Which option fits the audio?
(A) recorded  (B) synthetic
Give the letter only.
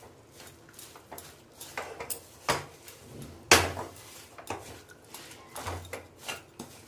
A